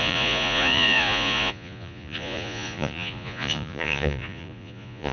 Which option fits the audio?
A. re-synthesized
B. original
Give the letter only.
A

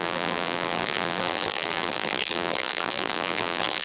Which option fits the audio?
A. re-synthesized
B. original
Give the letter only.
A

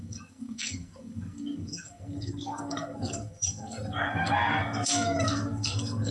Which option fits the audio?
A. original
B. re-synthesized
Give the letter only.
B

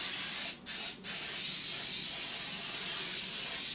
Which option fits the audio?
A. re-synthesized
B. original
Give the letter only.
B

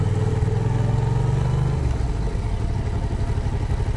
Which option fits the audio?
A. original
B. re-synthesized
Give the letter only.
A